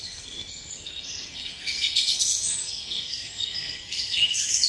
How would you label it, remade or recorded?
remade